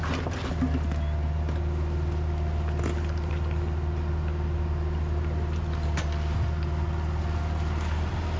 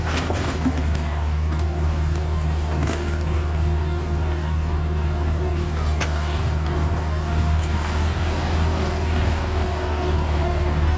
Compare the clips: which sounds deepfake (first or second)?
second